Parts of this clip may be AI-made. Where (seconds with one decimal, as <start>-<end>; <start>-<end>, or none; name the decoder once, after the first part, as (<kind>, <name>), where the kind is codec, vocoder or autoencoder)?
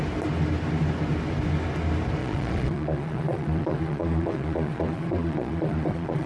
2.2-6.3 (vocoder, Vocos)